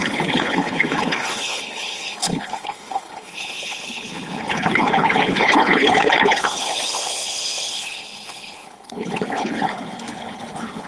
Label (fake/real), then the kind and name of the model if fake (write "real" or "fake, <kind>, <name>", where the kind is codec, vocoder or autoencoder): fake, codec, HILCodec